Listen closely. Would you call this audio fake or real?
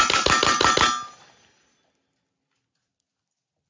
real